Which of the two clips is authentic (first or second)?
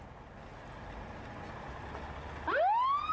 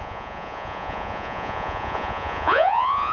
first